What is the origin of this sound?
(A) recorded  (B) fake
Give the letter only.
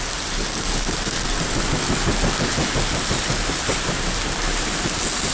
A